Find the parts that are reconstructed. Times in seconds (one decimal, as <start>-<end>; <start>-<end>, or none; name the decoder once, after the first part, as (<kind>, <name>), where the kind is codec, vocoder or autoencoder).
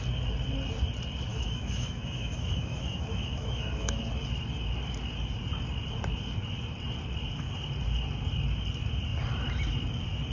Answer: 1.3-4.0 (autoencoder, DAC-VAE)